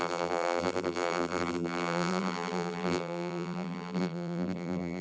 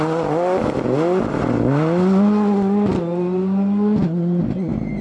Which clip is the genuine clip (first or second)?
second